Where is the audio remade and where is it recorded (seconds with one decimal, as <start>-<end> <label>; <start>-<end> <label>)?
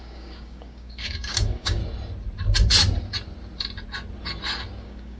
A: 0.0-1.8 remade; 1.8-4.8 recorded; 4.8-5.2 remade